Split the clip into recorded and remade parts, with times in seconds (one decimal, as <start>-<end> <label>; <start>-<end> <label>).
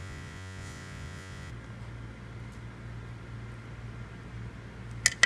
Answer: 0.0-1.5 remade; 1.5-5.3 recorded